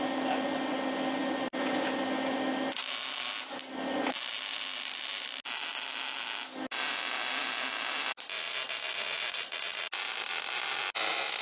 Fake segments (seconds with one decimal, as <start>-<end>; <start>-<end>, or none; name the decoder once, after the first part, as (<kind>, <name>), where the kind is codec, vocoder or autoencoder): none